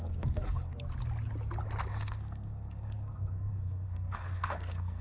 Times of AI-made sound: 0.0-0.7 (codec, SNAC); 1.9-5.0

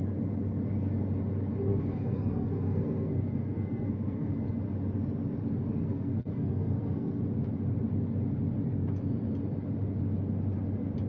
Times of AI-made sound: 1.7-4.3 (codec, SNAC); 5.8-7.2

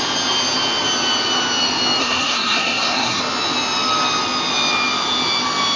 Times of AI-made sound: 2.0-3.2 (codec, SNAC)

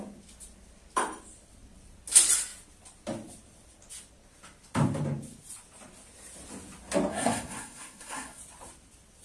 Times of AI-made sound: 7.1-8.4 (codec, SNAC)

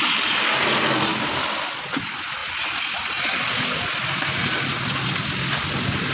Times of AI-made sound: none

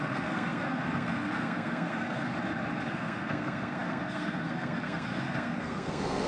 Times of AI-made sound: 0.0-2.3 (codec, SNAC); 2.9-6.3

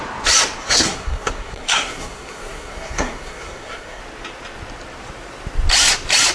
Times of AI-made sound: 0.6-4.0 (codec, SNAC)